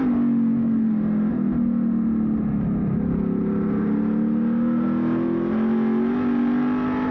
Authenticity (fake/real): real